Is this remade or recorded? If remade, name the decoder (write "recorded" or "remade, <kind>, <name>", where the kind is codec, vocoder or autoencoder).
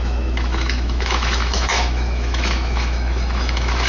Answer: remade, autoencoder, DAC-VAE